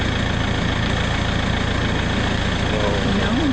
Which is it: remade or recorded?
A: recorded